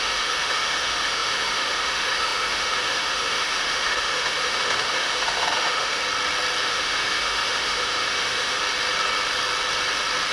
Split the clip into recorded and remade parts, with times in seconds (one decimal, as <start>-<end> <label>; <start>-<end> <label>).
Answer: 0.0-6.0 remade; 6.0-6.6 recorded; 6.6-8.6 remade; 8.6-10.3 recorded